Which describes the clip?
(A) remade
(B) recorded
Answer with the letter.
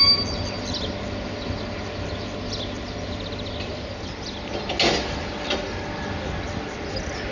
B